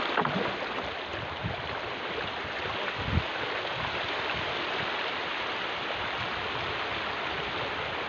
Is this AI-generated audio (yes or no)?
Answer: no